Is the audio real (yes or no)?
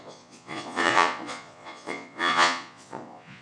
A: no